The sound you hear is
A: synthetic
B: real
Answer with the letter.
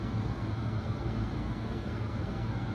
A